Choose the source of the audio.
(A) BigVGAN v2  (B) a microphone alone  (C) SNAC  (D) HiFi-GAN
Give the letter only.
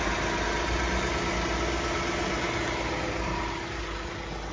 B